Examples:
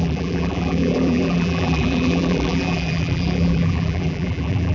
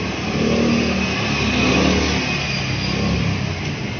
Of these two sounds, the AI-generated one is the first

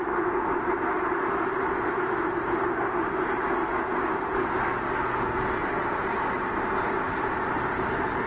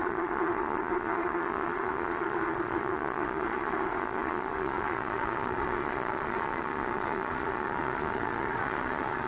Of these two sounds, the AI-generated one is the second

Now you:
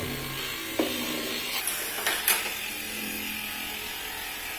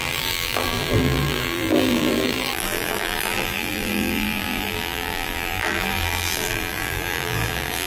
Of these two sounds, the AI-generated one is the second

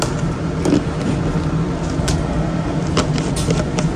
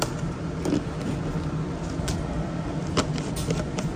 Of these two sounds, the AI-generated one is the second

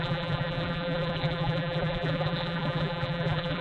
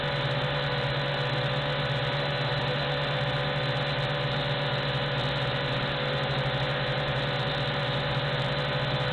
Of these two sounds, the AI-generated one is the first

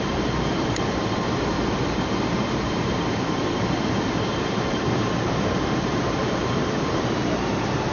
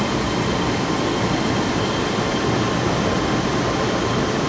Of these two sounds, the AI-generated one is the first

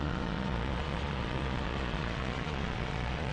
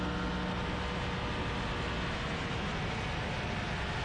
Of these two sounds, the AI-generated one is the first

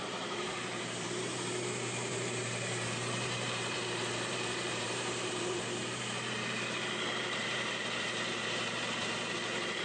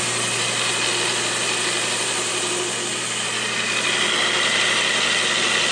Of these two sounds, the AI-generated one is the first